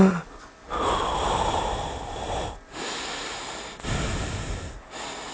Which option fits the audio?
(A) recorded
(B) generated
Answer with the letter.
A